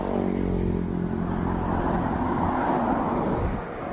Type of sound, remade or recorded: recorded